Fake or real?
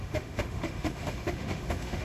fake